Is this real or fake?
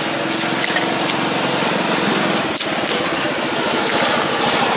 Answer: real